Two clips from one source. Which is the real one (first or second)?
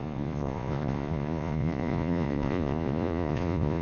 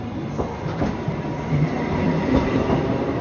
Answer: second